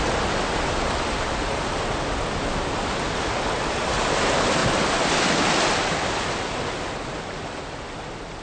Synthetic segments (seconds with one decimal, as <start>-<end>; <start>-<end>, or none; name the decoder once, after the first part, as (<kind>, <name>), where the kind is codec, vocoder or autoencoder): none